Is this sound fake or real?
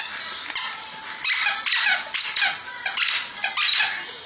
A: real